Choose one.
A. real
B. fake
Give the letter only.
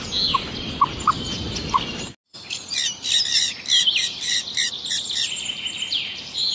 A